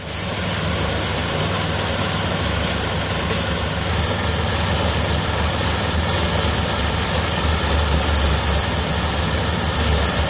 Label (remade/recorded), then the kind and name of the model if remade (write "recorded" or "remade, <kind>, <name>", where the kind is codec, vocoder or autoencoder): recorded